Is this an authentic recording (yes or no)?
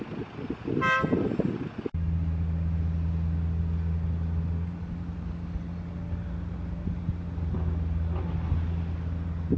yes